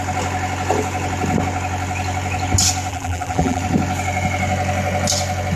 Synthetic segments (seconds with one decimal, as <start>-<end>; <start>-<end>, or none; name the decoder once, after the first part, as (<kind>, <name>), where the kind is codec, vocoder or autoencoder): 2.9-3.6 (vocoder, BigVGAN v2)